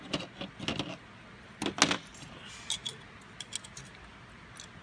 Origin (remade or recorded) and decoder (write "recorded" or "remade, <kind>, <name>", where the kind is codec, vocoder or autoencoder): recorded